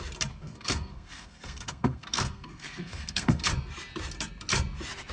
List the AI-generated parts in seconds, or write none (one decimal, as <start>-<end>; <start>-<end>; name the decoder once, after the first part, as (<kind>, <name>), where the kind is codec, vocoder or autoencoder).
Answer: 0.4-3.5 (codec, SNAC)